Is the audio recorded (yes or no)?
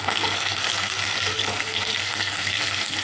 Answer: no